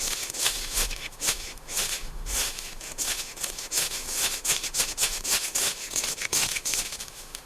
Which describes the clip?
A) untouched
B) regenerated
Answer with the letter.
B